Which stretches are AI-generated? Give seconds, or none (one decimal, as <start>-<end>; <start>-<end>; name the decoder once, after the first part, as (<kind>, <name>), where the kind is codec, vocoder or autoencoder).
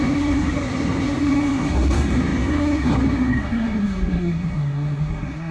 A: 0.0-5.5 (codec, SNAC)